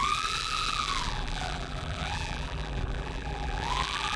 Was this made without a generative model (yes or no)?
no